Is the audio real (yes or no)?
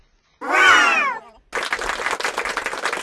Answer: yes